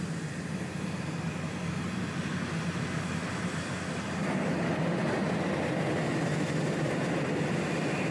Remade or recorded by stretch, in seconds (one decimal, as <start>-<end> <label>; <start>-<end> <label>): 0.0-8.1 recorded